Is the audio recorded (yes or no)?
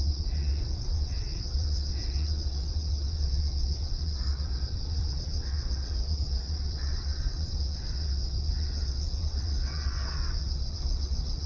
no